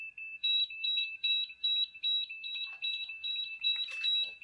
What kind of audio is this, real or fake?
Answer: fake